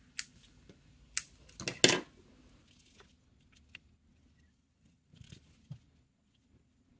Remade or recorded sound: recorded